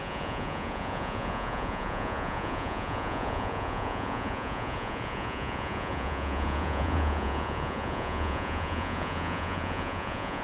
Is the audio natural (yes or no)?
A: no